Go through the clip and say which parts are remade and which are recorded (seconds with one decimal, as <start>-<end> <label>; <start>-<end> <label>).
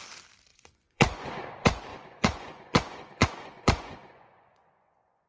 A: 0.0-0.5 recorded; 0.5-1.5 remade; 1.5-1.9 recorded; 1.9-5.3 remade